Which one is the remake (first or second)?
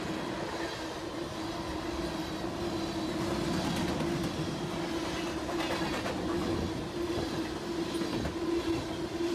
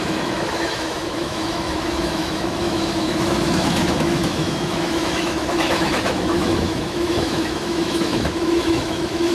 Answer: second